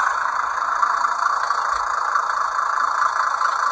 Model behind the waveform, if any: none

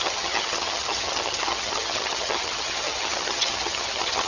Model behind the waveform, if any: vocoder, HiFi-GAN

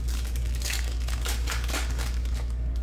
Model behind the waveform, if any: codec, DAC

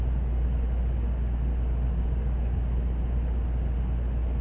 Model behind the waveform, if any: none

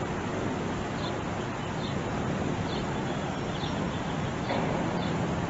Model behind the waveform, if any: none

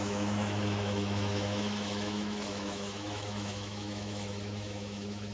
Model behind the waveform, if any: autoencoder, DAC-VAE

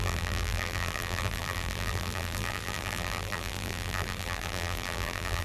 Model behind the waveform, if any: vocoder, BigVGAN v2